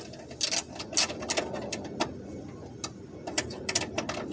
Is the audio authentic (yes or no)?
yes